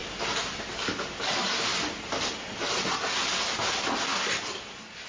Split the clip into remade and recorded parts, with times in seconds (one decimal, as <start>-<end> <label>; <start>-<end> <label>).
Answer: 0.0-5.1 recorded